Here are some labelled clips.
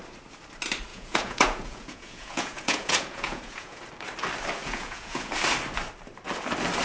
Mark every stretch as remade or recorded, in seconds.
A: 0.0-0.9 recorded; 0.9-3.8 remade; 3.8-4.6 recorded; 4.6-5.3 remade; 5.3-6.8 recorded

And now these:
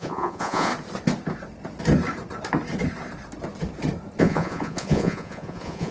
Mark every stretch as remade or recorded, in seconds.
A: 0.0-0.7 remade; 0.7-4.2 recorded; 4.2-5.9 remade

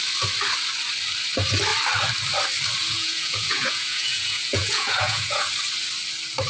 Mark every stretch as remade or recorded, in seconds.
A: 0.0-2.8 recorded; 2.8-5.5 remade; 5.5-6.5 recorded

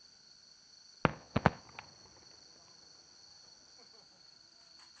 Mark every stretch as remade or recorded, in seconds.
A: 0.0-1.1 recorded; 1.1-1.6 remade; 1.6-5.0 recorded

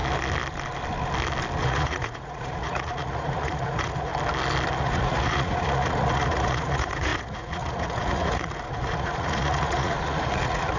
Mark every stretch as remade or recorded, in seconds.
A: 0.0-1.6 recorded; 1.6-4.1 remade; 4.1-4.8 recorded; 4.8-10.8 remade

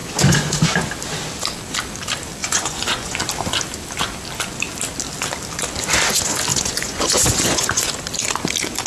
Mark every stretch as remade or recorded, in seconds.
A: 0.0-0.9 remade; 0.9-2.4 recorded; 2.4-3.2 remade; 3.2-6.5 recorded; 6.5-7.9 remade; 7.9-8.9 recorded

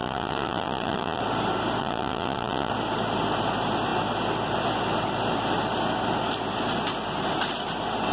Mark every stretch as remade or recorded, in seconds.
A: 0.0-1.2 remade; 1.2-1.8 recorded; 1.8-2.7 remade; 2.7-8.1 recorded